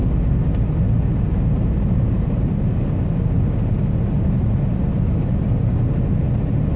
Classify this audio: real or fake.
real